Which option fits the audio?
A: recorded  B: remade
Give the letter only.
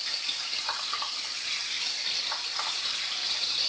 A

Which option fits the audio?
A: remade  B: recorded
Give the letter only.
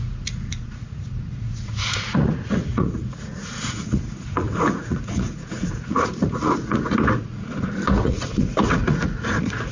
A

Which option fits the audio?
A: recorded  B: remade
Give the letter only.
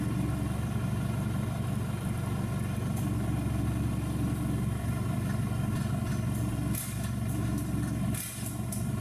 A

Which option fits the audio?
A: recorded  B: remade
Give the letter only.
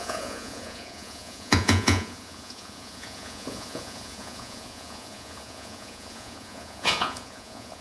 B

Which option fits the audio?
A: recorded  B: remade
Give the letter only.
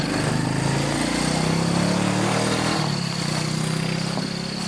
A